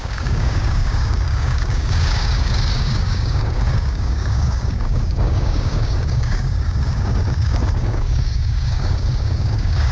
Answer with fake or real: fake